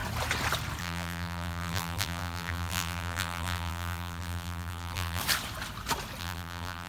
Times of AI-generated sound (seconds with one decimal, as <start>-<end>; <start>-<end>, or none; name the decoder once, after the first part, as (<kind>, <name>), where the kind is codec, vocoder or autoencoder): 0.8-5.2 (vocoder, BigVGAN v2); 6.2-6.9